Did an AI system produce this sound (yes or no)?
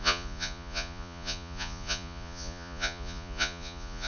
yes